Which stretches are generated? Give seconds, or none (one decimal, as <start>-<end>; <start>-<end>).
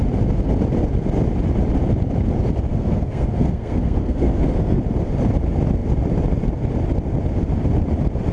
2.7-4.8